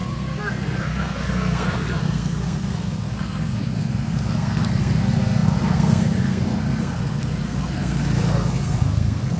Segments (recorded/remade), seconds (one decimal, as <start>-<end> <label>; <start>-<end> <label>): 0.0-9.4 remade